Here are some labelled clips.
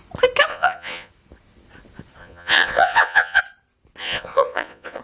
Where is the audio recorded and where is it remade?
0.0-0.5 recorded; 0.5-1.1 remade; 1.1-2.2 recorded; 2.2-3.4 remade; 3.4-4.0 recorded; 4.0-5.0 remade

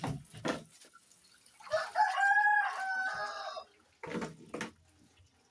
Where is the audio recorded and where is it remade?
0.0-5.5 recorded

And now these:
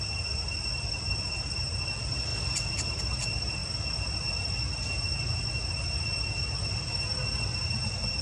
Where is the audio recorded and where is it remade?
0.0-8.2 recorded